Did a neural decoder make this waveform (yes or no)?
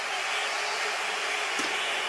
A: yes